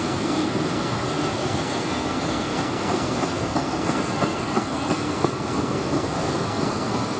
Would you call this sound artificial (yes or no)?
yes